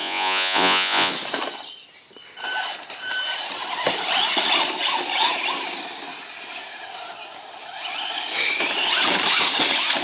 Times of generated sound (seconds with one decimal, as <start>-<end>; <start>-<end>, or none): 0.0-1.1